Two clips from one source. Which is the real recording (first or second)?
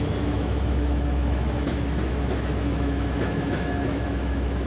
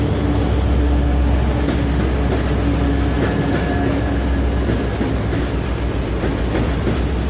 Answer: second